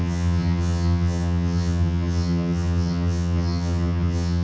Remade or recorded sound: remade